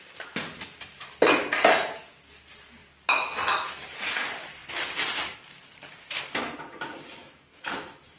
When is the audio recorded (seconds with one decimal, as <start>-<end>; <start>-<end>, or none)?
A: 0.0-7.2